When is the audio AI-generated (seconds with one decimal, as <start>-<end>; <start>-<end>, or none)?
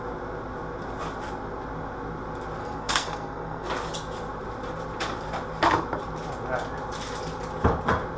2.6-3.7